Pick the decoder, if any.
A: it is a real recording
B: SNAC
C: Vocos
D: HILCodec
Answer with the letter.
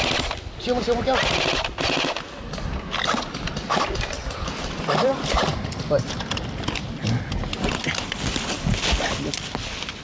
A